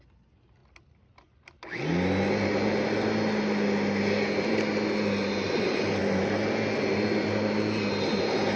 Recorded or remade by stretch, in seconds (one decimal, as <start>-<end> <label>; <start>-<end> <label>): 0.0-8.6 recorded